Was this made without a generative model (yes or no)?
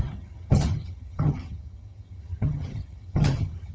no